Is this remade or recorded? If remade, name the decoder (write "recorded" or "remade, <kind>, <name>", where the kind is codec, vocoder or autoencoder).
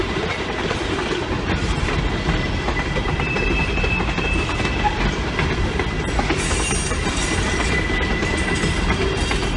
recorded